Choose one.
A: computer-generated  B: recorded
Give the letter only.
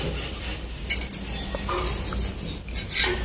B